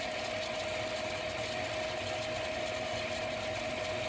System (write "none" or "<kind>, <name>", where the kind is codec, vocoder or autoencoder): none